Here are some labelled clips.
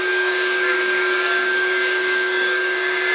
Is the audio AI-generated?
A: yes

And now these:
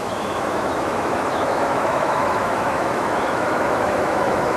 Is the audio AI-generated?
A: yes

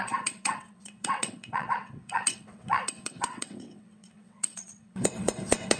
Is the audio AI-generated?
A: yes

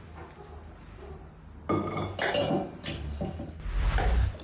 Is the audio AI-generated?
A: no